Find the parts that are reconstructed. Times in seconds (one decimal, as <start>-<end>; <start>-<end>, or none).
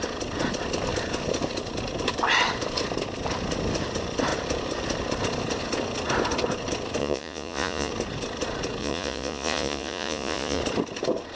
7.0-7.9; 8.8-10.6